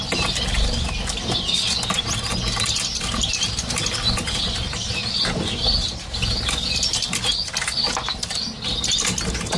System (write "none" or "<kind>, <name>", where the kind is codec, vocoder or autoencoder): none